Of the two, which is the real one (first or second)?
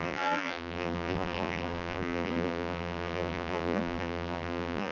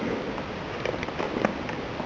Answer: second